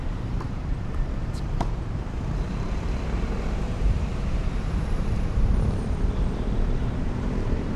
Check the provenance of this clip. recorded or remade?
remade